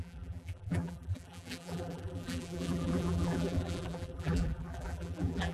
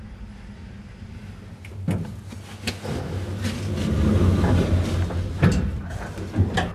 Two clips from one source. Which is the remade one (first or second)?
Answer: first